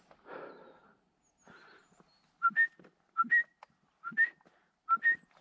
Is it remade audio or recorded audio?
recorded